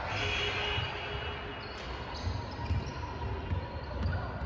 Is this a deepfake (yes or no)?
no